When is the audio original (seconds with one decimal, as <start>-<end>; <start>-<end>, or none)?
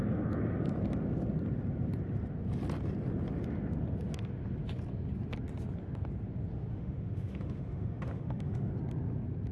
0.0-6.7; 8.7-9.5